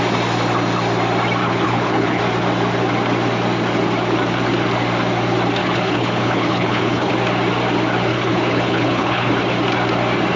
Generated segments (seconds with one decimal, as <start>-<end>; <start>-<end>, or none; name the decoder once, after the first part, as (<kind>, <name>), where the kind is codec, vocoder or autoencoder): 1.4-2.2 (codec, HILCodec); 5.6-7.1; 8.1-9.3